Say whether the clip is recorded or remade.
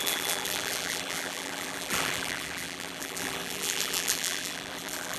remade